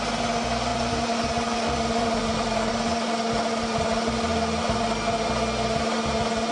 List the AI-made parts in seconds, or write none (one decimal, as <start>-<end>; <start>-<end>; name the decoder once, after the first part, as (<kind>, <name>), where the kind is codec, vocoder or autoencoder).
0.7-2.7 (vocoder, BigVGAN v2); 4.3-4.8